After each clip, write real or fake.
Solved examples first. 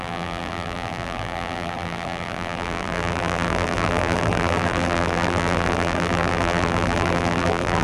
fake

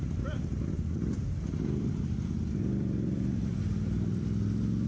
fake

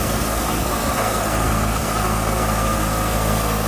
fake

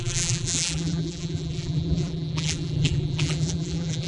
fake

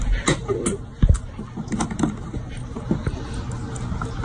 real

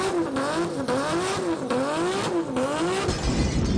real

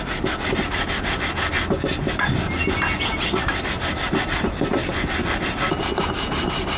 real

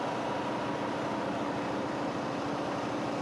real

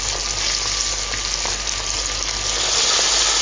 real